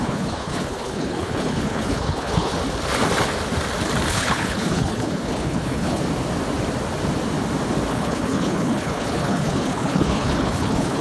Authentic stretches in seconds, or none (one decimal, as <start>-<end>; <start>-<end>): 2.6-4.1; 6.0-7.9

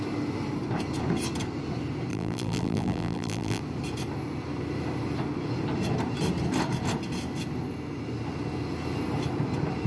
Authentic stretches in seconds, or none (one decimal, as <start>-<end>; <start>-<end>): 0.0-2.1; 3.6-9.9

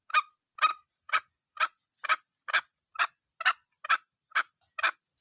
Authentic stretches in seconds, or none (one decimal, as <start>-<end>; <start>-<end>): 0.0-0.7; 1.9-5.2

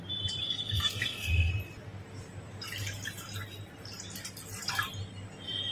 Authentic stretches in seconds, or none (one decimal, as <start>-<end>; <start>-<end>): 0.0-0.4; 1.5-5.7